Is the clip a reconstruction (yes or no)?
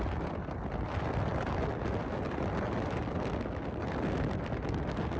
no